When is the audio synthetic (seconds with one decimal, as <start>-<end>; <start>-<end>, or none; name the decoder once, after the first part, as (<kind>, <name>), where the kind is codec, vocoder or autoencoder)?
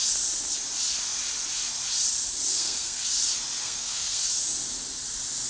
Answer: 2.5-3.1 (codec, SNAC); 3.6-4.3